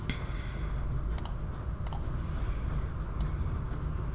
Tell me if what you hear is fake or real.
real